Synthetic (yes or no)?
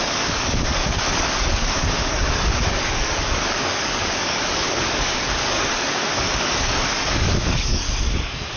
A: yes